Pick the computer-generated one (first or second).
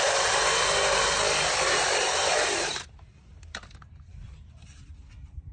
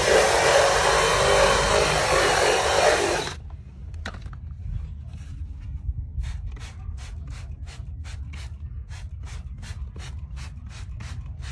first